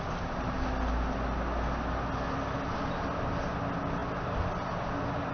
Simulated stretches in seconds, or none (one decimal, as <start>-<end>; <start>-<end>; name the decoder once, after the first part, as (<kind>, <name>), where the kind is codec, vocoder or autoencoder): none